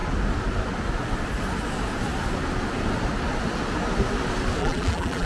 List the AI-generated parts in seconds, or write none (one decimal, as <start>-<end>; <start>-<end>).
4.6-5.3